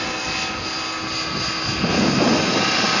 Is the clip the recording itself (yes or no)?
yes